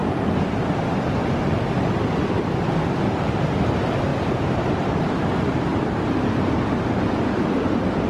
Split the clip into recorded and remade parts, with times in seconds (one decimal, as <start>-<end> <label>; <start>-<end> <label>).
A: 0.0-4.1 recorded; 4.1-5.2 remade; 5.2-5.7 recorded; 5.7-6.8 remade; 6.8-8.1 recorded